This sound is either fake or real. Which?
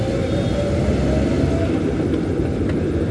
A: real